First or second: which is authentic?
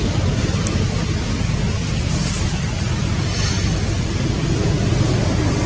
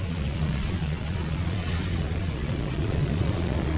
first